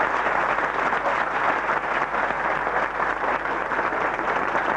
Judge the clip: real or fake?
real